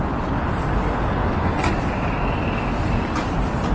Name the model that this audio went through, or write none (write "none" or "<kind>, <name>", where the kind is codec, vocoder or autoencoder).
none